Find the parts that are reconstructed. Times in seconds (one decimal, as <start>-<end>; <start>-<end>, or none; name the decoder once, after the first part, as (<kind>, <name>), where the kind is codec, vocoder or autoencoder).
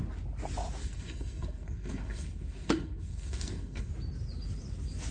0.8-3.9 (codec, SNAC)